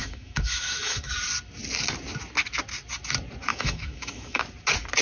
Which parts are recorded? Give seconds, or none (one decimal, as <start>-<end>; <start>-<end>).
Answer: 1.1-3.5; 4.4-5.0